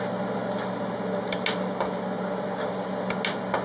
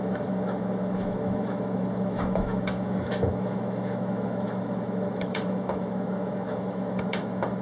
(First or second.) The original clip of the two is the first